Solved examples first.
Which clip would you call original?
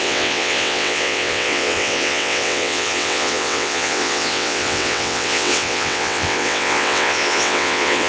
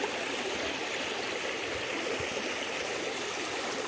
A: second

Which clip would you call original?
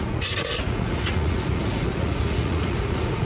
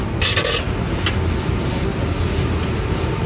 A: second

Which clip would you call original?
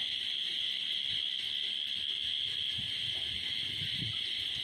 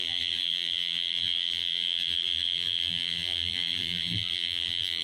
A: first